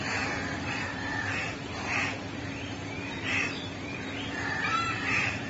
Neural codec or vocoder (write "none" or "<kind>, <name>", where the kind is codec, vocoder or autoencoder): vocoder, BigVGAN v2